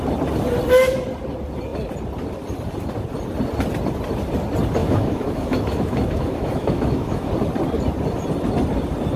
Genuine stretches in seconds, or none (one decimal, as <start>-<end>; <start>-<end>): 0.0-4.8; 7.3-9.2